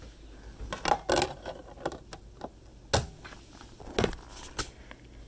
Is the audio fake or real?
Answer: real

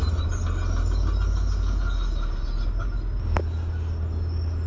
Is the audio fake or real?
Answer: real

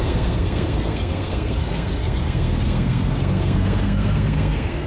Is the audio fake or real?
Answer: fake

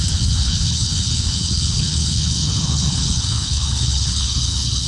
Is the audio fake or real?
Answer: fake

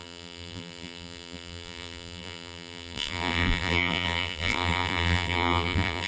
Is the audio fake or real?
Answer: fake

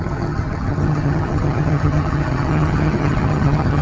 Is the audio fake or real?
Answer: fake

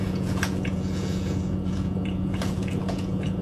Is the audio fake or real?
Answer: fake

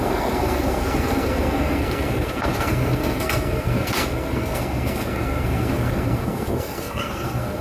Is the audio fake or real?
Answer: fake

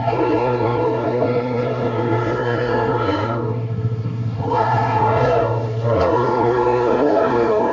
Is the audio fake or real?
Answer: fake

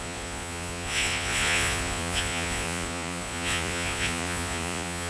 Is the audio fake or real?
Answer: fake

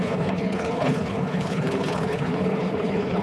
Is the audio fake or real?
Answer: fake